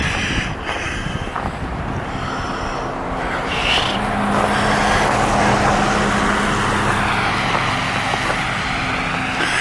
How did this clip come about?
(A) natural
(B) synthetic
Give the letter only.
A